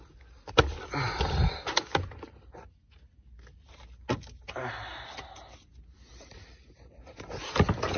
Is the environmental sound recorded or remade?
recorded